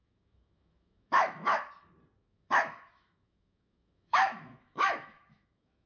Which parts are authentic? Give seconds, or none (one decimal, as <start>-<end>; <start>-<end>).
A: 1.7-2.2